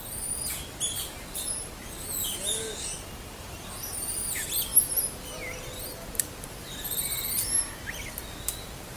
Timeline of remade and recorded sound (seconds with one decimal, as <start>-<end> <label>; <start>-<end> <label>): 0.0-9.0 recorded